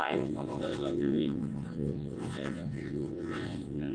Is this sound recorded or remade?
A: remade